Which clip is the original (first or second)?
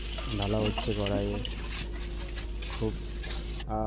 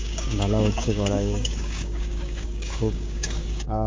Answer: first